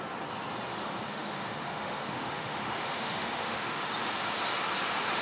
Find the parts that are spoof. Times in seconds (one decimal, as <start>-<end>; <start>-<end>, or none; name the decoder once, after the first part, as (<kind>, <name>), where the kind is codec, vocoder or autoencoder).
0.8-3.9 (autoencoder, DAC-VAE)